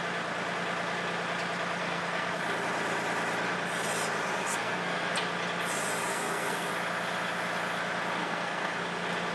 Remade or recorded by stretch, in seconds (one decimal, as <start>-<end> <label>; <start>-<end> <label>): 0.0-1.8 recorded; 1.8-2.4 remade; 2.4-4.5 recorded; 4.5-5.1 remade; 5.1-6.1 recorded; 6.1-6.7 remade; 6.7-8.2 recorded; 8.2-8.8 remade; 8.8-9.3 recorded

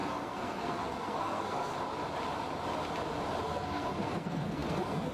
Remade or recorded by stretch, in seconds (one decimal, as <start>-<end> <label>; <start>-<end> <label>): 0.0-1.7 remade; 1.7-3.4 recorded; 3.4-5.1 remade

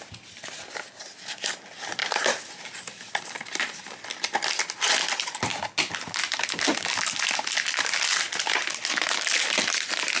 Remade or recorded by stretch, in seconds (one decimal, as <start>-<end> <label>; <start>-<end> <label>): 0.0-10.2 recorded

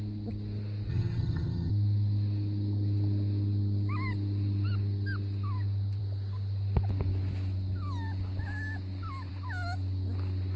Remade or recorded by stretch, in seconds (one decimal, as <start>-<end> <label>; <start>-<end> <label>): 0.0-0.9 recorded; 0.9-1.7 remade; 1.7-10.6 recorded

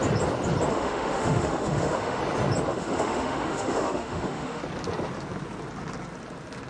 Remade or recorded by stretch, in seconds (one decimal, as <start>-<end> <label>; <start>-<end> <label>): 0.0-0.7 recorded; 0.7-2.2 remade; 2.2-2.7 recorded; 2.7-4.6 remade; 4.6-6.7 recorded

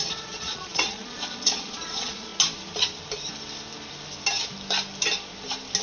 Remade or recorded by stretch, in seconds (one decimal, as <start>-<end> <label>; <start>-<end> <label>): 0.0-2.3 remade; 2.3-5.8 recorded